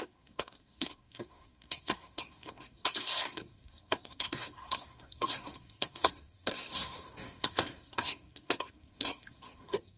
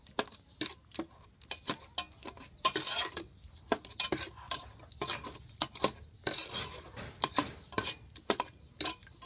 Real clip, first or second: second